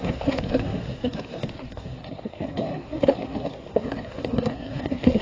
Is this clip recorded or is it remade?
remade